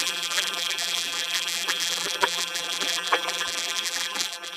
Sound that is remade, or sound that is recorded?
remade